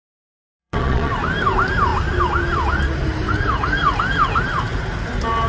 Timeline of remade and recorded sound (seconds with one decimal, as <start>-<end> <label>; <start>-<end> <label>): 0.0-0.6 recorded; 0.6-1.1 remade; 1.1-5.5 recorded